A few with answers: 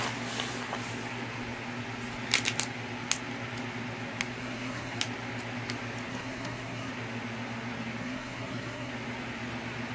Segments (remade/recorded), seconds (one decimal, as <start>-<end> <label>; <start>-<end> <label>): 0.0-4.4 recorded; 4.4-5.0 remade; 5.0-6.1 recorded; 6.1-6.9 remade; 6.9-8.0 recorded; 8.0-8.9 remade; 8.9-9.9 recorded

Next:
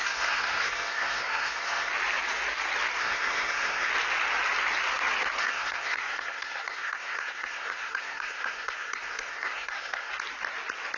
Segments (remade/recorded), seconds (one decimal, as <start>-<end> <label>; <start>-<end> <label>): 0.0-1.9 remade; 1.9-3.0 recorded; 3.0-3.9 remade; 3.9-5.4 recorded; 5.4-10.1 remade; 10.1-11.0 recorded

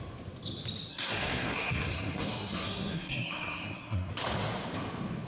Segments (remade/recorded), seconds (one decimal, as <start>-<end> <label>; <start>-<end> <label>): 0.0-0.9 recorded; 0.9-4.1 remade; 4.1-5.3 recorded

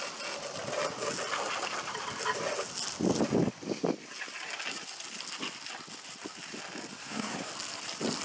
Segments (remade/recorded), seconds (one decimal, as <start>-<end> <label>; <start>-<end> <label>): 0.0-7.0 recorded; 7.0-7.5 remade; 7.5-8.2 recorded

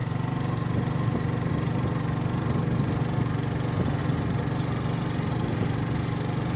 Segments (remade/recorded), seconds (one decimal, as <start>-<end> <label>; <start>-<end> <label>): 0.0-6.6 recorded

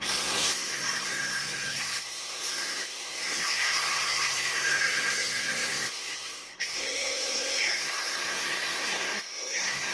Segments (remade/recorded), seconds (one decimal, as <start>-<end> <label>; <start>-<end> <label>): 0.0-9.9 remade

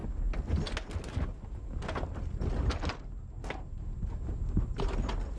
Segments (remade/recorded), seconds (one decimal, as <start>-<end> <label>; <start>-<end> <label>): 0.0-5.4 recorded